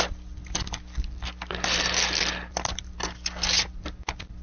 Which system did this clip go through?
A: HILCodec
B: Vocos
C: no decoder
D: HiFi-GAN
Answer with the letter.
C